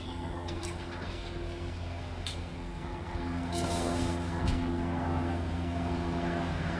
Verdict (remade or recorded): remade